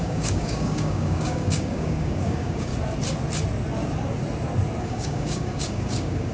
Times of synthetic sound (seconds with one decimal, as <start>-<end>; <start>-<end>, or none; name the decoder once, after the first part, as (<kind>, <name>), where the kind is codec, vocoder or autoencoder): 0.0-2.7 (codec, DAC); 4.8-6.3